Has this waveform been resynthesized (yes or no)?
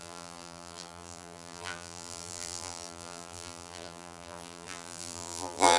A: yes